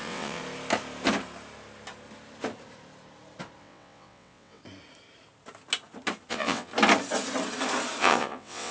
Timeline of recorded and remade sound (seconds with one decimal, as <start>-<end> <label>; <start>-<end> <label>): 0.0-0.4 remade; 0.4-3.6 recorded; 3.6-4.6 remade; 4.6-6.3 recorded; 6.3-6.7 remade; 6.7-8.0 recorded; 8.0-8.7 remade